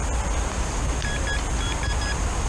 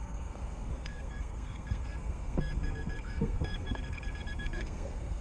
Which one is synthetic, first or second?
second